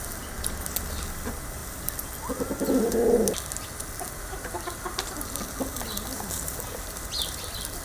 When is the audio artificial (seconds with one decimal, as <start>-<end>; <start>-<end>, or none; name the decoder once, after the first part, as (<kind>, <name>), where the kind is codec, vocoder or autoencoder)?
none